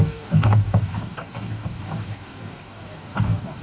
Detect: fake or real fake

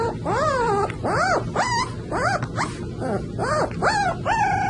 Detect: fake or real real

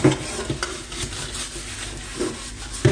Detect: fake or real real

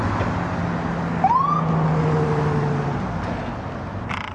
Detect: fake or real real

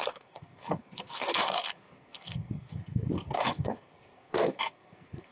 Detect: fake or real fake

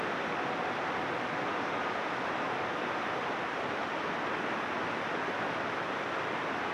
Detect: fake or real real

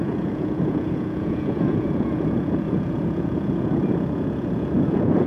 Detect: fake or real fake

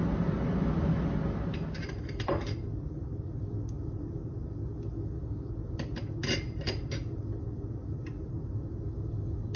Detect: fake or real real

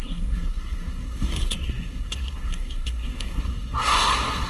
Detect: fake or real fake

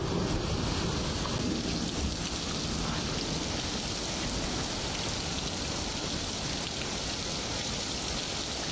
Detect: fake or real real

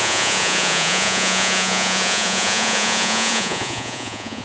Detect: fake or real fake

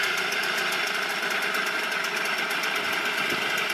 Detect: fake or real real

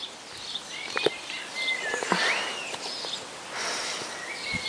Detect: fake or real real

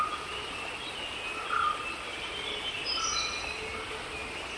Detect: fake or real real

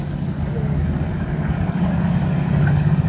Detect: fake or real fake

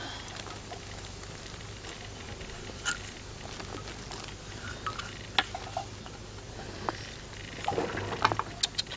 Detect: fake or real real